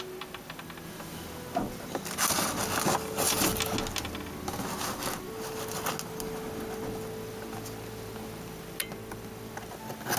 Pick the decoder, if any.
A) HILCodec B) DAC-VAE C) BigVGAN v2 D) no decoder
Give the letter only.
D